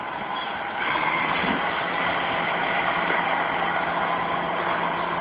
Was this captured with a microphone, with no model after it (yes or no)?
yes